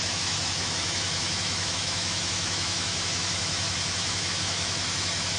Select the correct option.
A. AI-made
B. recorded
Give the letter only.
A